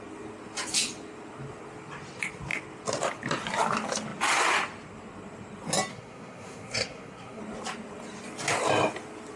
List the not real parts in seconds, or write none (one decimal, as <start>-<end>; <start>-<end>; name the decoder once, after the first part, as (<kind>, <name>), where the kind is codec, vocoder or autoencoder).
5.9-7.4 (codec, SNAC)